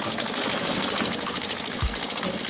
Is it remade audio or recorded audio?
remade